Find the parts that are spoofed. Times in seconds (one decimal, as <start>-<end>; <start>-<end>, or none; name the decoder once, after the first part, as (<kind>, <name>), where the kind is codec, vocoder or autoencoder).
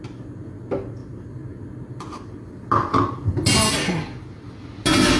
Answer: none